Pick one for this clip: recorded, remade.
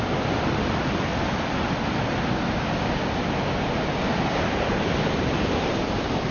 recorded